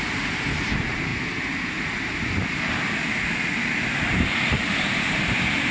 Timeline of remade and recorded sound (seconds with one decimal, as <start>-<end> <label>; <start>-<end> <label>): 0.0-1.1 remade; 1.1-4.5 recorded; 4.5-5.7 remade